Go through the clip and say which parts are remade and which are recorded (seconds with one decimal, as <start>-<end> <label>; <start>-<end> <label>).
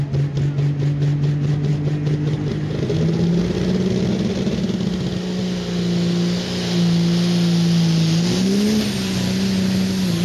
0.0-10.2 recorded